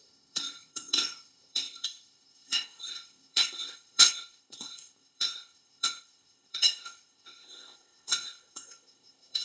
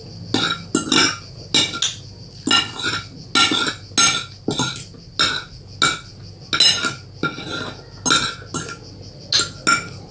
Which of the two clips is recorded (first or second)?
second